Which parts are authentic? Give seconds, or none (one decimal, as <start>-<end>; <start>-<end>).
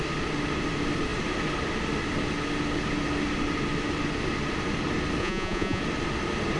0.0-5.2; 5.8-6.6